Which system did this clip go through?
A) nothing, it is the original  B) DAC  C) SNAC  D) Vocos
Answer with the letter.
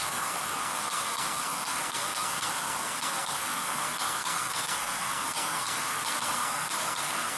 C